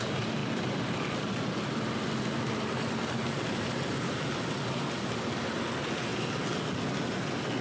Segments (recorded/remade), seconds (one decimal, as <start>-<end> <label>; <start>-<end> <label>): 0.0-0.4 recorded; 0.4-5.0 remade; 5.0-7.6 recorded